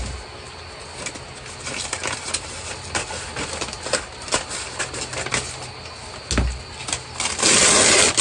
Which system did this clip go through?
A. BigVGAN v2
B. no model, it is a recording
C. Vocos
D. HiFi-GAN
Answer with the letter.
B